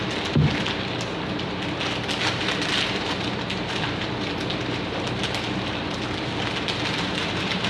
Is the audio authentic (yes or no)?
yes